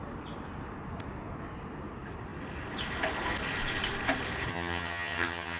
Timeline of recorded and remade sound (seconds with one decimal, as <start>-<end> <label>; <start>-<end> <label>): 0.0-4.5 recorded; 4.5-5.6 remade